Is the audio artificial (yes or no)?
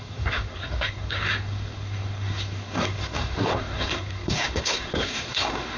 yes